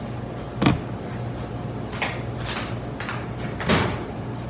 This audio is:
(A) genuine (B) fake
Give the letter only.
A